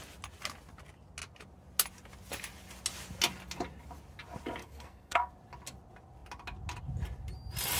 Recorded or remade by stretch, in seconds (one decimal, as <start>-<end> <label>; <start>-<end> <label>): 0.0-4.6 recorded; 4.6-5.3 remade; 5.3-7.8 recorded